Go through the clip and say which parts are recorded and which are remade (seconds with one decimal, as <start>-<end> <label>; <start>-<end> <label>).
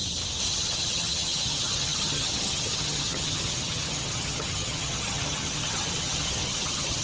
0.0-0.5 recorded; 0.5-7.0 remade